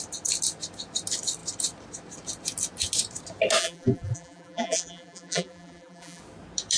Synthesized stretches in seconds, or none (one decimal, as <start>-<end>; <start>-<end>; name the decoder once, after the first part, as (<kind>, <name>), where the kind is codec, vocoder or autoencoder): 3.6-6.2 (vocoder, BigVGAN v2)